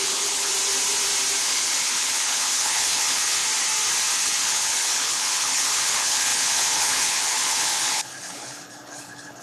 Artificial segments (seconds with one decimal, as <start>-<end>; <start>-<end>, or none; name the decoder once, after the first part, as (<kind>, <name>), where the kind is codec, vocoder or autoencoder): 0.0-0.5 (codec, HILCodec); 1.4-3.4; 4.2-9.4